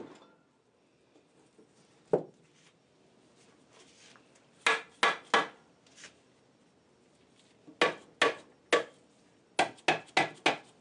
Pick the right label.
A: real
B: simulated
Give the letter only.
A